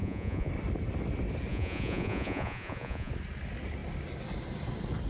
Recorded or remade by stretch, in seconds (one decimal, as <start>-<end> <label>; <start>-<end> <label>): 0.0-0.5 remade; 0.5-1.5 recorded; 1.5-3.1 remade; 3.1-5.1 recorded